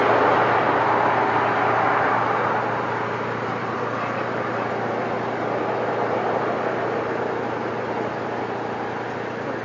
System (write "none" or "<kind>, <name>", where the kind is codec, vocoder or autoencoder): none